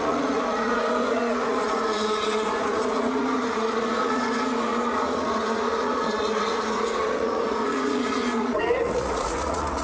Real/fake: fake